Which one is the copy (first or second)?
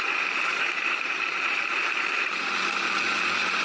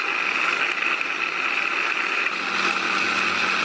first